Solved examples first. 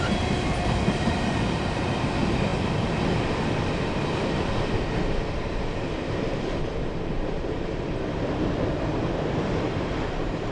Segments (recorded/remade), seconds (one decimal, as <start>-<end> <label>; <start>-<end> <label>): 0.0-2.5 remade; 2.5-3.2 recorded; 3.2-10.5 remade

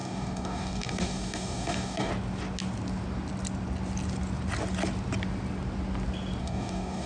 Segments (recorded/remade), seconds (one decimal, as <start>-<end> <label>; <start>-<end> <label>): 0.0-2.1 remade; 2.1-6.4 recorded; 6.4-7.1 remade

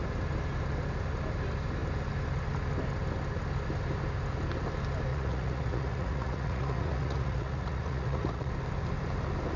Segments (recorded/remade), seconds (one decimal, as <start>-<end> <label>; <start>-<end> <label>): 0.0-5.1 recorded; 5.1-8.5 remade; 8.5-9.6 recorded

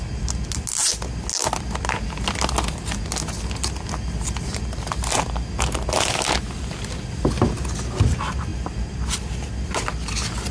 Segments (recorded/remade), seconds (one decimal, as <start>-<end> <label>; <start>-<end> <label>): 0.0-10.5 recorded

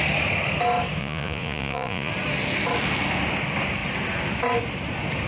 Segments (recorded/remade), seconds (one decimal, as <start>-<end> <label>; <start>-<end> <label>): 0.0-1.0 recorded; 1.0-2.1 remade; 2.1-5.3 recorded

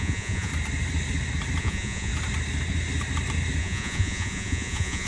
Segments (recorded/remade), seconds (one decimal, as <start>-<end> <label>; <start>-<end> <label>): 0.0-0.5 remade; 0.5-1.6 recorded; 1.6-2.1 remade; 2.1-3.6 recorded; 3.6-5.1 remade

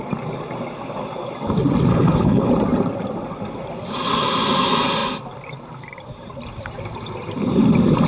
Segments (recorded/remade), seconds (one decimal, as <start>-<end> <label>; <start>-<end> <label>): 0.0-1.9 recorded; 1.9-2.5 remade; 2.5-8.1 recorded

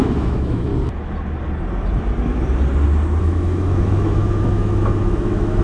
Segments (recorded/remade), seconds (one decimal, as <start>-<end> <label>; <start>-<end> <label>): 0.0-0.7 remade; 0.7-3.2 recorded; 3.2-5.6 remade